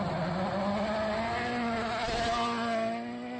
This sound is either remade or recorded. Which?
recorded